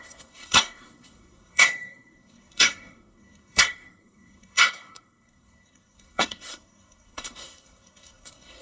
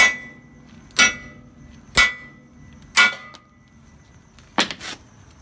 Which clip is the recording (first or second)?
second